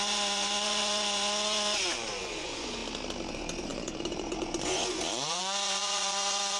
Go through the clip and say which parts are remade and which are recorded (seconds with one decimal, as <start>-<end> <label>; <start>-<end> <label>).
0.0-2.8 remade; 2.8-3.3 recorded; 3.3-6.6 remade